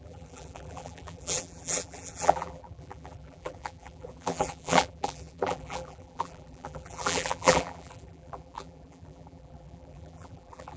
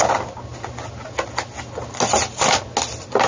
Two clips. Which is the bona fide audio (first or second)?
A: second